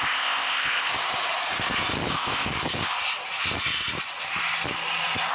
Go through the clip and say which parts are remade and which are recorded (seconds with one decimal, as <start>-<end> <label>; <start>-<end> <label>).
0.0-0.9 remade; 0.9-2.1 recorded; 2.1-2.5 remade; 2.5-5.3 recorded